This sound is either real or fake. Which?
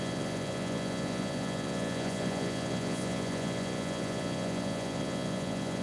fake